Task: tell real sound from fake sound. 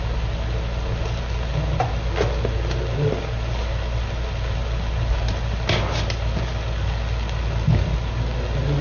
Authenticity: real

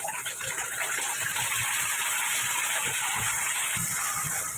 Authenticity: real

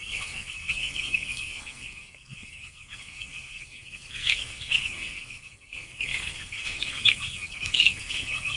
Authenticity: fake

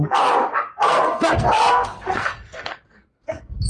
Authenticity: fake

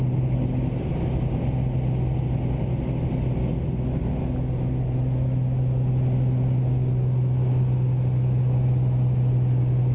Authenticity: real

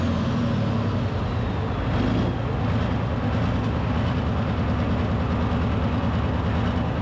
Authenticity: real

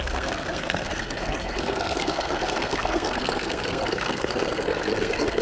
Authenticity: fake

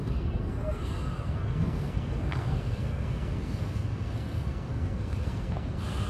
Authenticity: fake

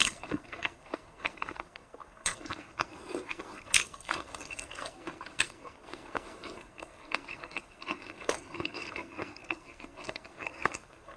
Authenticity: fake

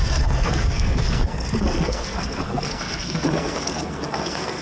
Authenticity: fake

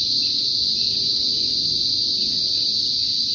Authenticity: real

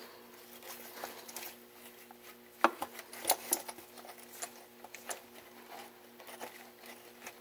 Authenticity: real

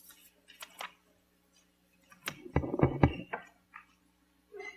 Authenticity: real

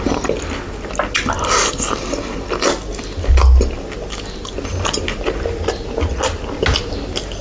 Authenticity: real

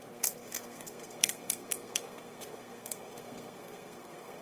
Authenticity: fake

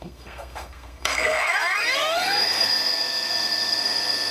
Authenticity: fake